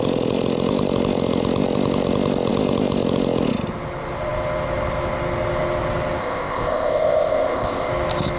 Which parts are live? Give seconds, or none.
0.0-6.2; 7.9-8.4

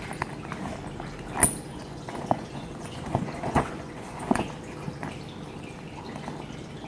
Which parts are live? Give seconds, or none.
0.0-1.7; 4.5-6.9

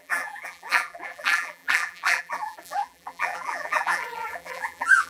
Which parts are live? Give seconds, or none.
none

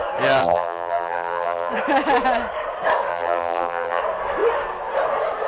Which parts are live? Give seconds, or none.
0.0-0.4; 1.7-3.1; 4.0-5.5